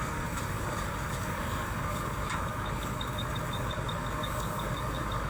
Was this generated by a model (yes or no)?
yes